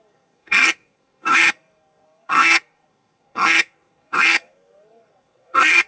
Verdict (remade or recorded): remade